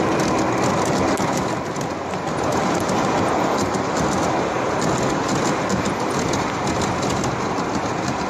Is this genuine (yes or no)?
yes